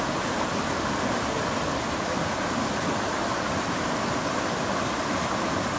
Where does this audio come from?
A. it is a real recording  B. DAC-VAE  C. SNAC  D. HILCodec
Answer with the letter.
A